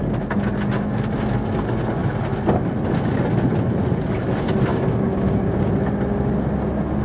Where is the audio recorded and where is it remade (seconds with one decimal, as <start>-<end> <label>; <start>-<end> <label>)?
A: 0.0-4.7 recorded; 4.7-5.7 remade; 5.7-7.0 recorded